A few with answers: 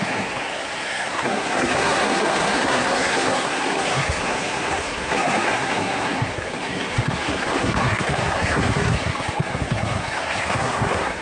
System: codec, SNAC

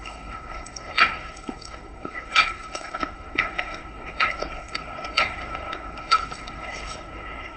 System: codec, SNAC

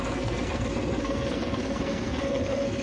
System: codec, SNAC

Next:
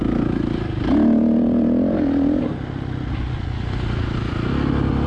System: none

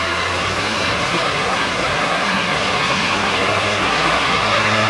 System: codec, SNAC